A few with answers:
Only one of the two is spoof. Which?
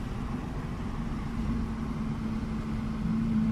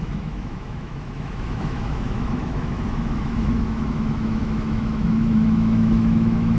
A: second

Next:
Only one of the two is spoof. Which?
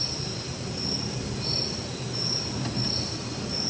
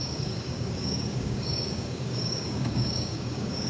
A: second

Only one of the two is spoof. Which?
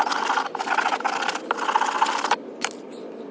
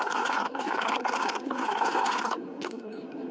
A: second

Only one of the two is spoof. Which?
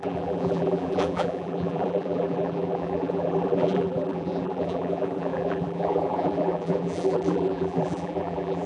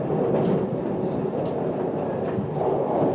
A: first